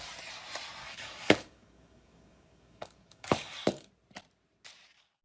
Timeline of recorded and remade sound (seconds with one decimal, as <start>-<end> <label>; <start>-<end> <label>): 0.0-0.8 recorded; 0.8-3.9 remade; 3.9-5.2 recorded